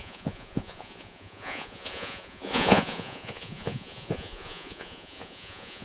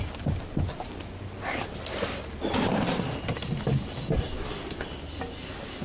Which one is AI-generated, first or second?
first